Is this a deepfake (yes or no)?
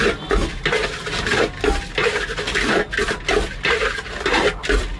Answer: no